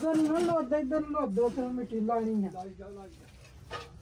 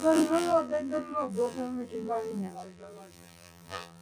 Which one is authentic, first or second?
first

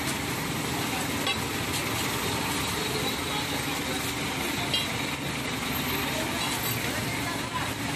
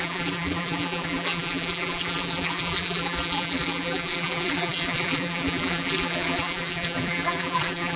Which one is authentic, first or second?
first